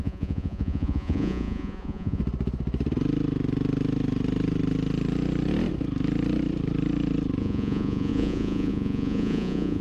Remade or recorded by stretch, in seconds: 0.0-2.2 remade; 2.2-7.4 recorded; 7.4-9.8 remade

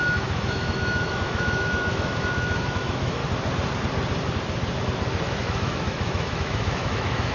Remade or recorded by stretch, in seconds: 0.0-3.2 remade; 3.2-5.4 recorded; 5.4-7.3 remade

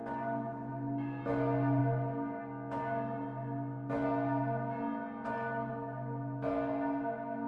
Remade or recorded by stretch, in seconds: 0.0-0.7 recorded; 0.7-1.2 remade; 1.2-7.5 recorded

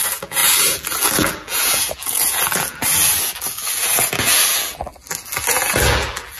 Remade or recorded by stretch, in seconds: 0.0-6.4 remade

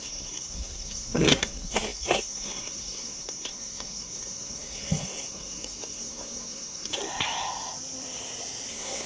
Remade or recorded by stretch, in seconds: 0.0-7.0 remade; 7.0-8.7 recorded; 8.7-9.1 remade

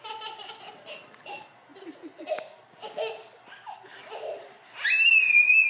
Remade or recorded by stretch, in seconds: 0.0-5.7 recorded

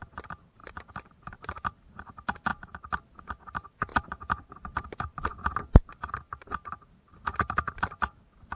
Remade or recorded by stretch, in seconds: 0.0-8.6 recorded

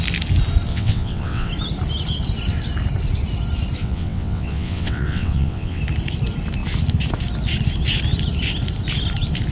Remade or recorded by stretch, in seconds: 0.0-0.7 recorded; 0.7-1.5 remade; 1.5-3.8 recorded; 3.8-5.8 remade; 5.8-9.5 recorded